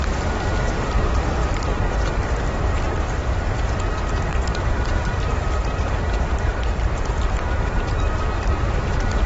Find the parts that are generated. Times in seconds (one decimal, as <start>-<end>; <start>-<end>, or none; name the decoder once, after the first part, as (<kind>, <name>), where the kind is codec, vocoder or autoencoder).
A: 1.4-3.9 (vocoder, BigVGAN v2); 4.3-8.2

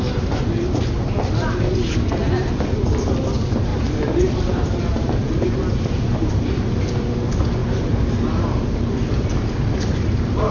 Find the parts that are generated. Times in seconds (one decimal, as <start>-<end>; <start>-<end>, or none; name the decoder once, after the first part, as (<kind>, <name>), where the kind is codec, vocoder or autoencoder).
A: 3.7-5.7 (vocoder, BigVGAN v2)